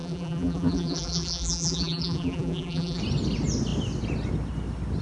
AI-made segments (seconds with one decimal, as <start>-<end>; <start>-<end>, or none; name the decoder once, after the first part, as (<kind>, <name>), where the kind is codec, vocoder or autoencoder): 0.0-3.0 (vocoder, BigVGAN v2)